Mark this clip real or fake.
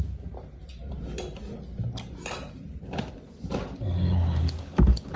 real